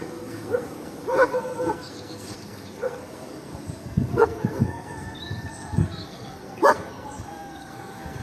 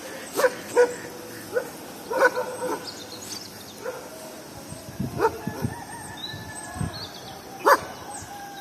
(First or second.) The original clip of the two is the second